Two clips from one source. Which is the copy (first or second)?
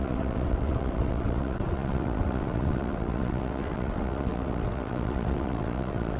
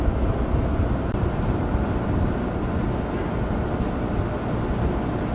first